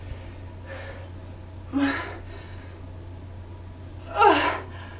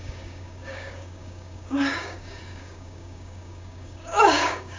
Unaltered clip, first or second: first